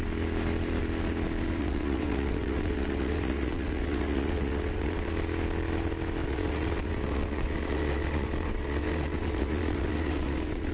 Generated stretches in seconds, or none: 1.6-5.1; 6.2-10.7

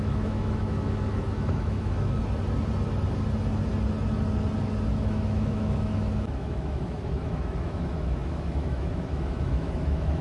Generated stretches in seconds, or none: 0.0-2.2; 4.9-10.2

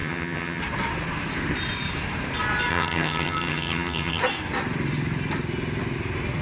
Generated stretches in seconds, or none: 0.0-0.6; 2.7-4.2

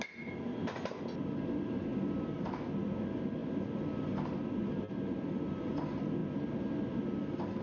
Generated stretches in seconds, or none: none

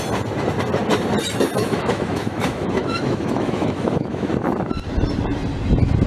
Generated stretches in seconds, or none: 1.6-4.3

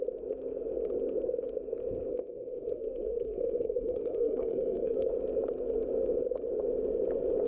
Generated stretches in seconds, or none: 2.1-5.1